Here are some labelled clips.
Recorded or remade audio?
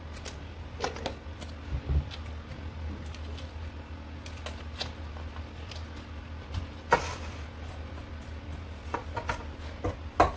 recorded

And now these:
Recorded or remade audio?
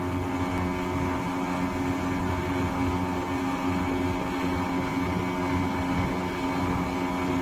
recorded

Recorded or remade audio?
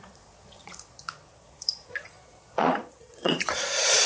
remade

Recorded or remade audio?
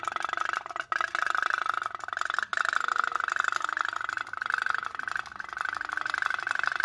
recorded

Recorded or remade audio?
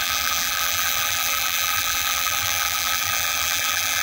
remade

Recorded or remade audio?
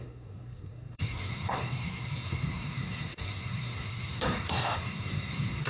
remade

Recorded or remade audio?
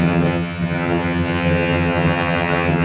remade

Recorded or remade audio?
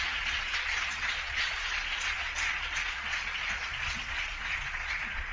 remade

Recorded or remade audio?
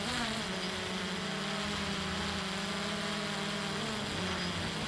recorded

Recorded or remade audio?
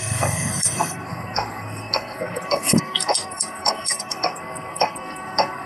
remade